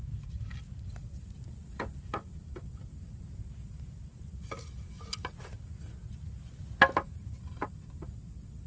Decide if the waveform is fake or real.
real